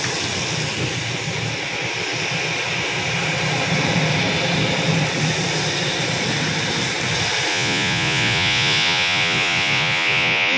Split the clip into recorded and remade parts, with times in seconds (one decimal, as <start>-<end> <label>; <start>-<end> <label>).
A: 0.0-7.5 recorded; 7.5-10.6 remade